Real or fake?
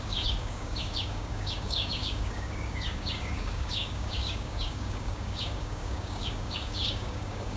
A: fake